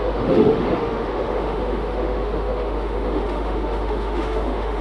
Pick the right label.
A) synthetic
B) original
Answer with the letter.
A